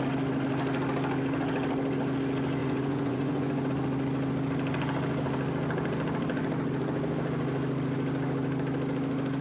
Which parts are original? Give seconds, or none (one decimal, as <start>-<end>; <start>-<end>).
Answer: 0.0-2.6; 3.7-9.4